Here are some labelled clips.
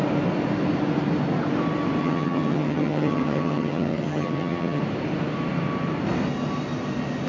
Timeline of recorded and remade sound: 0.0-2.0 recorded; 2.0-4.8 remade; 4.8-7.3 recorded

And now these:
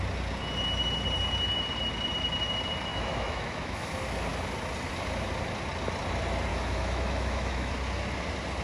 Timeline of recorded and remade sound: 0.0-2.9 recorded; 2.9-3.9 remade; 3.9-6.5 recorded; 6.5-7.7 remade; 7.7-8.6 recorded

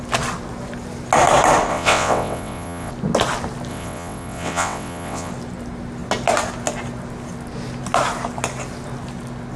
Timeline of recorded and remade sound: 0.0-1.7 recorded; 1.7-2.9 remade; 2.9-3.7 recorded; 3.7-5.3 remade; 5.3-9.6 recorded

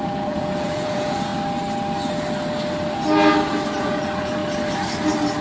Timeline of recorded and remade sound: 0.0-1.3 remade; 1.3-3.8 recorded; 3.8-4.4 remade; 4.4-5.4 recorded

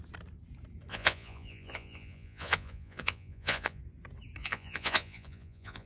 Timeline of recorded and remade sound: 0.0-0.9 recorded; 0.9-3.8 remade; 3.8-4.4 recorded; 4.4-5.9 remade

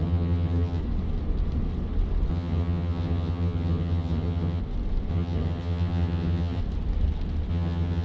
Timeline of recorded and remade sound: 0.0-0.8 remade; 0.8-2.3 recorded; 2.3-4.6 remade; 4.6-5.1 recorded; 5.1-6.6 remade; 6.6-7.5 recorded; 7.5-8.0 remade

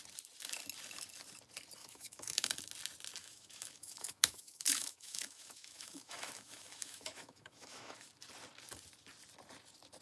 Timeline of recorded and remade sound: 0.0-1.8 recorded; 1.8-2.5 remade; 2.5-3.2 recorded; 3.2-8.1 remade; 8.1-10.0 recorded

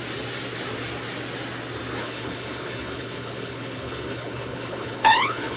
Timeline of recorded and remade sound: 0.0-2.0 recorded; 2.0-5.6 remade